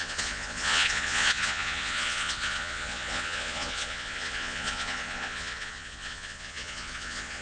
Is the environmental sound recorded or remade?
remade